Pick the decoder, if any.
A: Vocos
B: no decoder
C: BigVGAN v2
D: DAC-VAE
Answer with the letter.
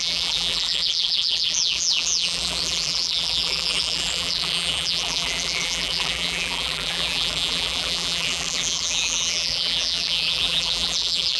C